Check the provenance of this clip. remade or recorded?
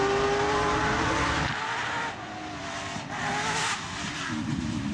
recorded